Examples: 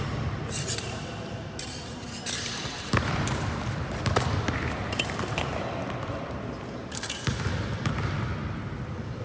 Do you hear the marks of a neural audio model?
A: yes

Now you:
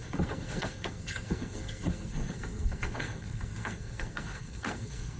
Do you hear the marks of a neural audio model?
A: yes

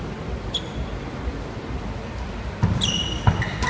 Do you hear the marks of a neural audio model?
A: no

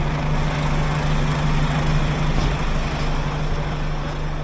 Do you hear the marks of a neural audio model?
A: no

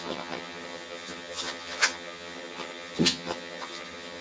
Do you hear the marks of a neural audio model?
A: yes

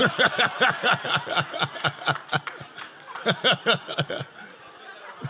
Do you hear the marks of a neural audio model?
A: no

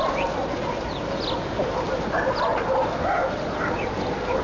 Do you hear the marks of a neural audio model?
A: no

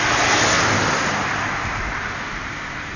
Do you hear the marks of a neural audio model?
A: no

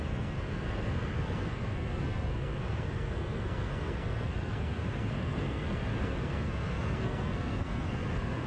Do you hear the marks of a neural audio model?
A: yes